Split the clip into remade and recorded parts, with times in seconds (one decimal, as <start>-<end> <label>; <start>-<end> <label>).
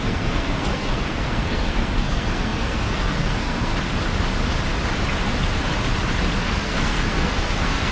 0.0-3.7 remade; 3.7-6.4 recorded; 6.4-7.9 remade